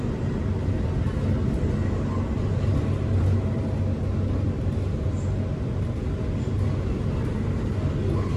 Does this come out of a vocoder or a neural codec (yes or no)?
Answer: no